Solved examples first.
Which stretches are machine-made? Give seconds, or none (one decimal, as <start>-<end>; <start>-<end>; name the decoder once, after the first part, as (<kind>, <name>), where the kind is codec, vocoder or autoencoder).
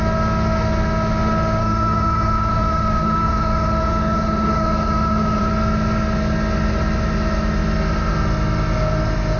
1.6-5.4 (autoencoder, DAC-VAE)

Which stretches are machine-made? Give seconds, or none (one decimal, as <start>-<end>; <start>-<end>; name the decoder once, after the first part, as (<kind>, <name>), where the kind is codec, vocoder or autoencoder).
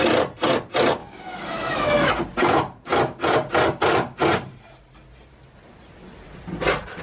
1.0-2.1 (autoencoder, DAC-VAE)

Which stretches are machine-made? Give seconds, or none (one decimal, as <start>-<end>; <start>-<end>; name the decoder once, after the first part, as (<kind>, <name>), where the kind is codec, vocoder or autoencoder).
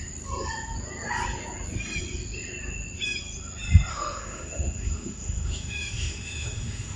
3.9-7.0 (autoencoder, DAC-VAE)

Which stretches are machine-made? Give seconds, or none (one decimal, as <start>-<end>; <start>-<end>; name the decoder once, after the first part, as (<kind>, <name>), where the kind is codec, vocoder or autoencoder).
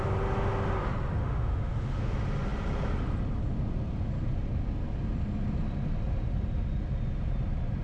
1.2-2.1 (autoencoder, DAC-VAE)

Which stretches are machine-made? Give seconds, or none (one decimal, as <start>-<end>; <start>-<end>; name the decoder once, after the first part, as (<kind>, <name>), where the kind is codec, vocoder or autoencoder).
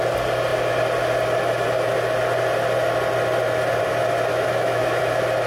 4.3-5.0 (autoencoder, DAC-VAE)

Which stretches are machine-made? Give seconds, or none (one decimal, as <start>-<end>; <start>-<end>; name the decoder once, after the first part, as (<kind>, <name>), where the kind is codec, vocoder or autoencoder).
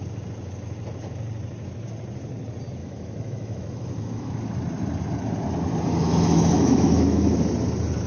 2.8-4.3 (autoencoder, DAC-VAE); 6.0-7.5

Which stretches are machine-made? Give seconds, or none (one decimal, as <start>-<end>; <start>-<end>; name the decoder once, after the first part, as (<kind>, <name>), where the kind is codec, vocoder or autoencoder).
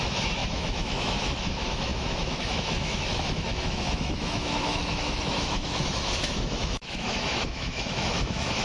0.0-8.6 (autoencoder, DAC-VAE)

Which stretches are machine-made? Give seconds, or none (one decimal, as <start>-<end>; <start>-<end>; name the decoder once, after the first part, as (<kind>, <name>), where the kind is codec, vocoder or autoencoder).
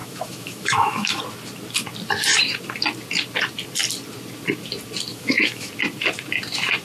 0.0-1.2 (autoencoder, DAC-VAE); 5.1-5.7